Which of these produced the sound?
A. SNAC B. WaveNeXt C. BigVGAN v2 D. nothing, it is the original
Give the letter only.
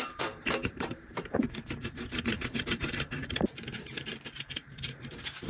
C